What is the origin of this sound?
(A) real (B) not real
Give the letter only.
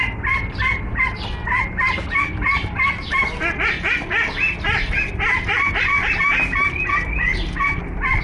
A